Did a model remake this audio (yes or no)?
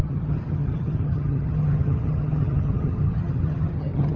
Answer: yes